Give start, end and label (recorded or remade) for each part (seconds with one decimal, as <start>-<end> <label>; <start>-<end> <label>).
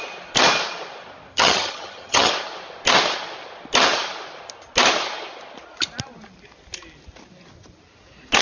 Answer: 0.0-1.3 recorded; 1.3-2.3 remade; 2.3-8.4 recorded